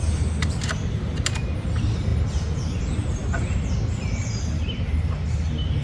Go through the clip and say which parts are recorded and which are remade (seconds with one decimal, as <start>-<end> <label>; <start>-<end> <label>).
0.0-5.8 recorded